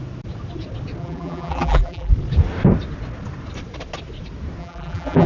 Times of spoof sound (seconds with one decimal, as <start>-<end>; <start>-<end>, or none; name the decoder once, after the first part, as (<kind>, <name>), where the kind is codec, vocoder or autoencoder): 1.0-2.1 (vocoder, BigVGAN v2); 4.6-5.3